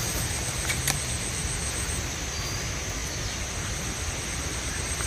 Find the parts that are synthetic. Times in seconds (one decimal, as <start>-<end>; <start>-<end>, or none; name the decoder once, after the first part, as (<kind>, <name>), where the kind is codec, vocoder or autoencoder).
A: none